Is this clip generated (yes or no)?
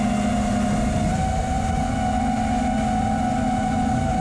no